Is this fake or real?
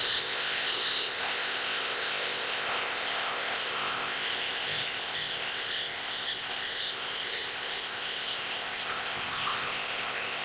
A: fake